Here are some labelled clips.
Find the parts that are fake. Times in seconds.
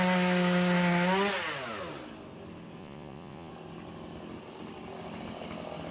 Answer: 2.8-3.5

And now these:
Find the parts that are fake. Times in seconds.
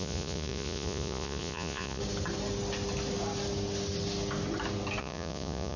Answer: 0.0-2.0; 5.0-5.8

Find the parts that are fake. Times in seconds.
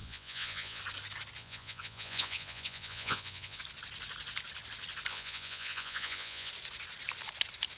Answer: 0.0-0.8; 1.4-3.6; 5.1-6.5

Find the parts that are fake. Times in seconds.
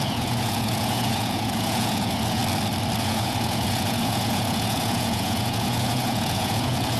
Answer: 0.0-2.4; 3.0-7.0